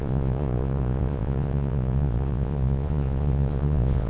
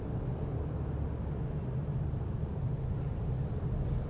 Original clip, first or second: second